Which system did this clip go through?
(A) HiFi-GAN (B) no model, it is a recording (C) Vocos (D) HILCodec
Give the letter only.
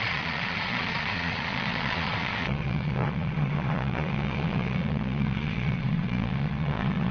C